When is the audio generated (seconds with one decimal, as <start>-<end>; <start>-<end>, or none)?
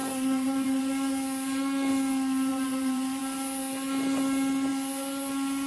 0.0-0.8; 2.5-3.2